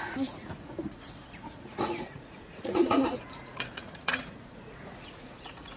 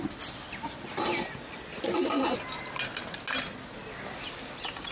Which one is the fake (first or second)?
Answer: first